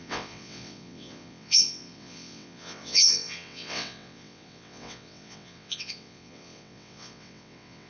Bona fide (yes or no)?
no